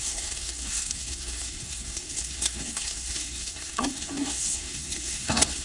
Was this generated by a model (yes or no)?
yes